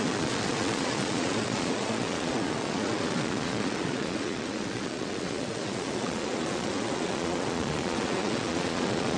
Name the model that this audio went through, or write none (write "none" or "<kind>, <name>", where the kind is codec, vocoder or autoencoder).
vocoder, Vocos